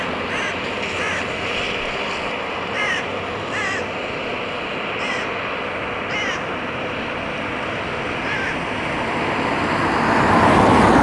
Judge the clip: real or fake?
real